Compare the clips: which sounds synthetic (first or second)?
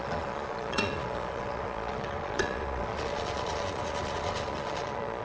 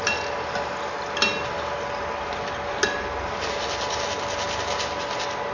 first